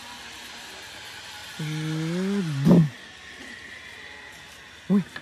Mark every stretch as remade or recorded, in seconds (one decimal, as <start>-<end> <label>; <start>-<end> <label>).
0.0-5.2 recorded